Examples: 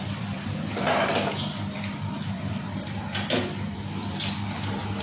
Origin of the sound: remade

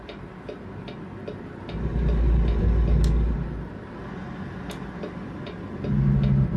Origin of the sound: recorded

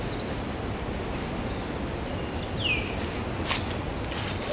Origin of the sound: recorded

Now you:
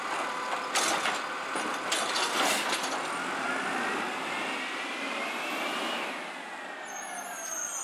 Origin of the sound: recorded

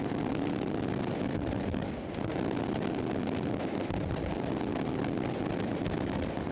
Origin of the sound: recorded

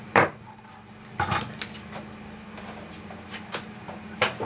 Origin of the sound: recorded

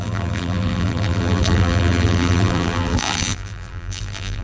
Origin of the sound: remade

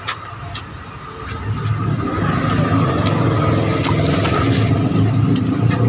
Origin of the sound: recorded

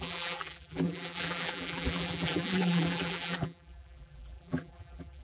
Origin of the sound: remade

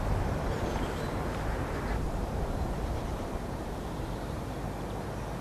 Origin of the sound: remade